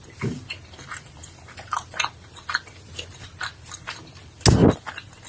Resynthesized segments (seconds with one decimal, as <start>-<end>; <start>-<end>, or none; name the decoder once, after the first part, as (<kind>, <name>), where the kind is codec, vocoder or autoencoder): none